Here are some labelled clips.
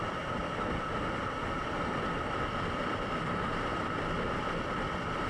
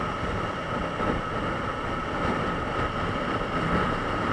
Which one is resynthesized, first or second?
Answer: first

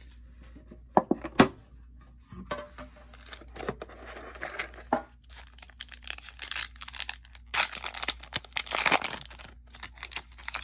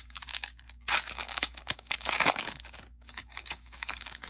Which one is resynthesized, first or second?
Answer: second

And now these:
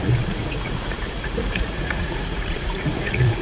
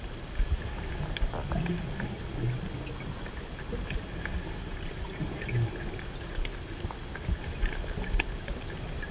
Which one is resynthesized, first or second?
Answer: first